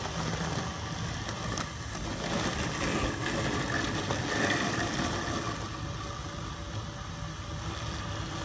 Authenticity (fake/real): real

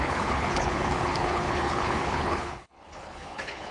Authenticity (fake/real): fake